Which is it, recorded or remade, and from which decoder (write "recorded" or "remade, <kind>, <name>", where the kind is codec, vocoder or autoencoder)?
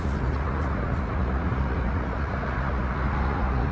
remade, vocoder, Vocos